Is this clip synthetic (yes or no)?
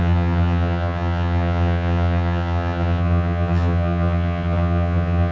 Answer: yes